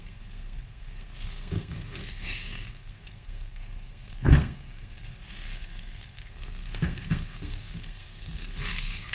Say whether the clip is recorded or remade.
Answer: remade